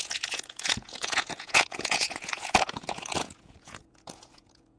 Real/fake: fake